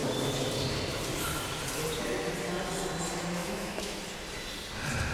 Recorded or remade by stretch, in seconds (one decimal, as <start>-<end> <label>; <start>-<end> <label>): 0.0-3.4 recorded; 3.4-4.0 remade; 4.0-5.1 recorded